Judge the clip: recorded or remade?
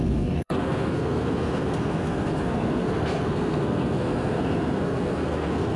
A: remade